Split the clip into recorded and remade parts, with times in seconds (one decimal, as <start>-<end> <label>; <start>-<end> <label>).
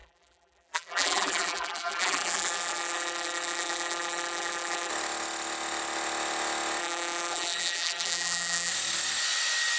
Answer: 0.0-4.9 remade; 4.9-6.8 recorded; 6.8-8.7 remade; 8.7-9.8 recorded